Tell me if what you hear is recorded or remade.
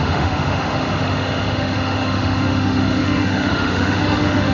remade